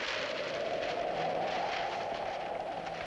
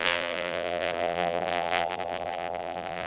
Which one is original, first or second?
first